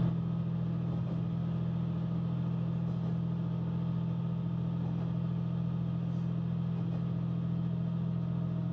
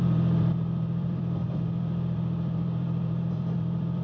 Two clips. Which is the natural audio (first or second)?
first